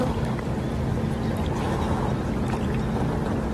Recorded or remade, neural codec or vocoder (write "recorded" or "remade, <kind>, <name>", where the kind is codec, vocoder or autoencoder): recorded